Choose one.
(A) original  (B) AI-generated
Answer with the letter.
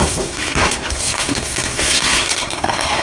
B